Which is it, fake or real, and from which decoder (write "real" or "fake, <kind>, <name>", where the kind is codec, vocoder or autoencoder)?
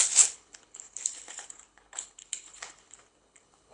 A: fake, codec, HILCodec